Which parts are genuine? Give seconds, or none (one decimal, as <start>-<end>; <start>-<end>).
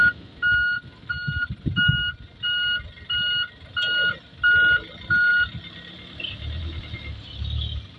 0.0-8.0